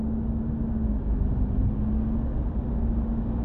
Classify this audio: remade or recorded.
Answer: recorded